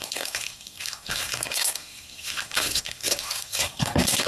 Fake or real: fake